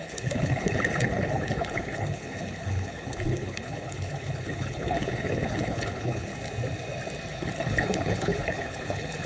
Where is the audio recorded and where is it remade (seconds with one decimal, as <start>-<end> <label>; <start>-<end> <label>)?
0.0-6.3 remade; 6.3-7.3 recorded; 7.3-9.3 remade